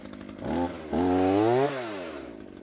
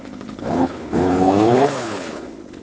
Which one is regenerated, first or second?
second